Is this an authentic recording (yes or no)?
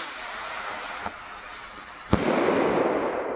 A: yes